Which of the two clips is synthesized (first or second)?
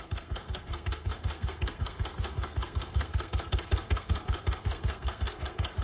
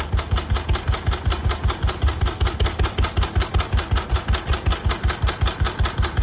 first